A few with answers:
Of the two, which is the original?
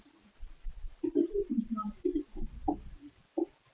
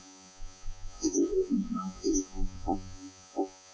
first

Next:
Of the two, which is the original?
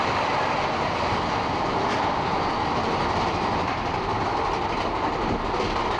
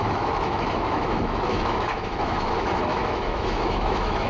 first